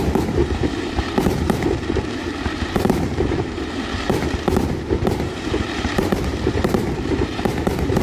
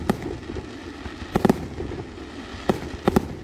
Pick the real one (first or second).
second